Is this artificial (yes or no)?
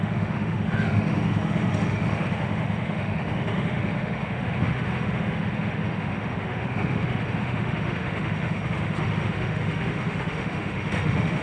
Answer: yes